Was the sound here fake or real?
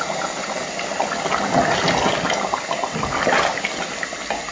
real